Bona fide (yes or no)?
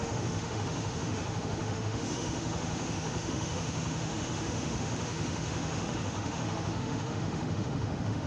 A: no